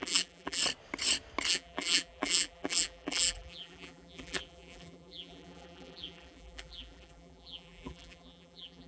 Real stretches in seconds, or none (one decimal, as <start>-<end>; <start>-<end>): 0.6-1.5